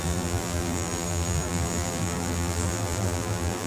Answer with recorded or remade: remade